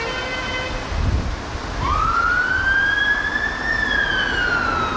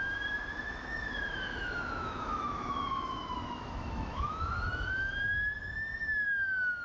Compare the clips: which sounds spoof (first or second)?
second